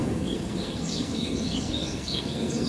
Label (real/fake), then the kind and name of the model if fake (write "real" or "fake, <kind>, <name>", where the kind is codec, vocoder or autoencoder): fake, codec, SNAC